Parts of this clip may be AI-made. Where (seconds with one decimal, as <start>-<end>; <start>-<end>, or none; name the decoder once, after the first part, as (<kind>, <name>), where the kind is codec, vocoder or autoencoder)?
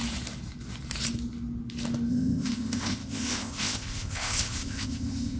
2.1-5.4 (codec, ZipCodec)